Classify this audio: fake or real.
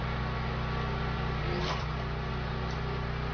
real